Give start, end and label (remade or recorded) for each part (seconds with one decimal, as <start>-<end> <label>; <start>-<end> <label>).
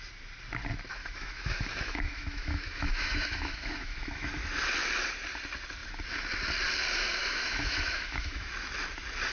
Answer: 0.0-1.0 recorded; 1.0-4.5 remade; 4.5-7.2 recorded; 7.2-8.5 remade; 8.5-9.3 recorded